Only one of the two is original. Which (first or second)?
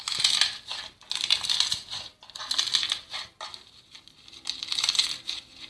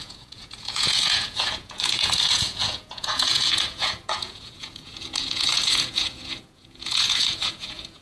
first